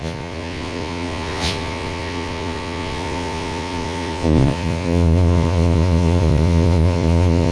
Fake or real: fake